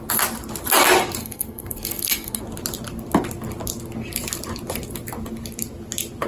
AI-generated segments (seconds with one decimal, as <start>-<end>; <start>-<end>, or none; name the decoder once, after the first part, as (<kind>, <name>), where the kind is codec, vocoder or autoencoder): 1.2-2.4 (codec, SNAC)